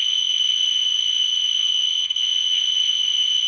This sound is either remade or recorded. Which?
remade